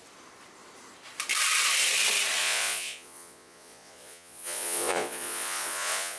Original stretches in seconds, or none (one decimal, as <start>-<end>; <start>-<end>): 0.0-2.4